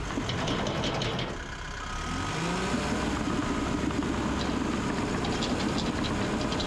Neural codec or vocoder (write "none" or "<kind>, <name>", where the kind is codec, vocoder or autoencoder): none